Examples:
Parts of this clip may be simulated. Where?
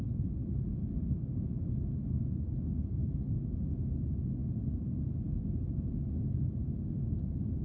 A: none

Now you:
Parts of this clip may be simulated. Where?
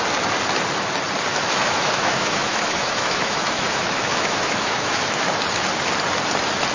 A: 1.3-5.3 (autoencoder, DAC-VAE)